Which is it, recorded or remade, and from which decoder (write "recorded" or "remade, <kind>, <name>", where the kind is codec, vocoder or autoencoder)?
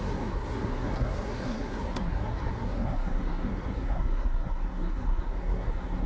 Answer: remade, codec, SNAC